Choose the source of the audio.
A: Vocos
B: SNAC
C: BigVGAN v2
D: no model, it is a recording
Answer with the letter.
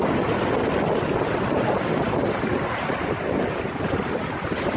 D